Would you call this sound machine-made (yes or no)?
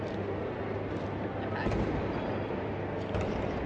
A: no